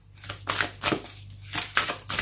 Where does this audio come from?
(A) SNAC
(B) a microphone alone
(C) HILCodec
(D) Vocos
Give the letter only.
B